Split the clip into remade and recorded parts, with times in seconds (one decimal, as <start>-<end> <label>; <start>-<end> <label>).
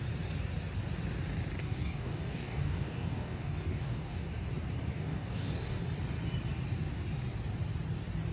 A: 0.0-1.6 recorded; 1.6-4.3 remade; 4.3-4.9 recorded; 4.9-5.8 remade; 5.8-8.3 recorded